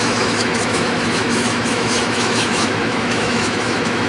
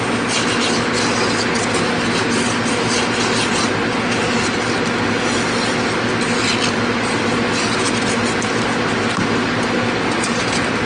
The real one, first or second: second